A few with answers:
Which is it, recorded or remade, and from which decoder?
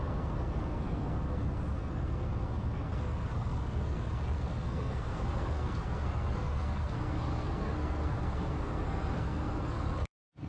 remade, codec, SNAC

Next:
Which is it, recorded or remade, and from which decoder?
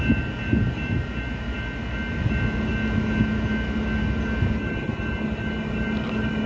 recorded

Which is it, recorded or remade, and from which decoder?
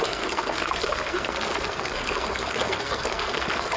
remade, codec, SNAC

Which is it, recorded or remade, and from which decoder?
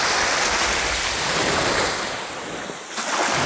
recorded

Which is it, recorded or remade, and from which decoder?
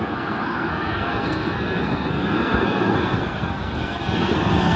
remade, codec, SNAC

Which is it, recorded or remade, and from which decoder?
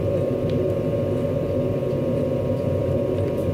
recorded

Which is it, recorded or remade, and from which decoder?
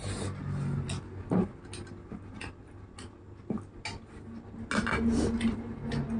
recorded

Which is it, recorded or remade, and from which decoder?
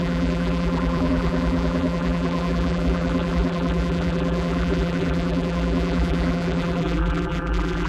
remade, vocoder, BigVGAN v2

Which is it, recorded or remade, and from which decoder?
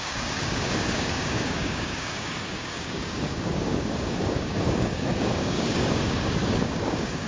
remade, codec, DAC